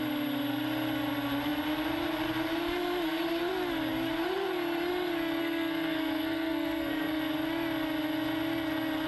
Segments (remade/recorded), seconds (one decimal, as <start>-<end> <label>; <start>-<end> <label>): 0.0-5.4 recorded; 5.4-7.2 remade; 7.2-9.1 recorded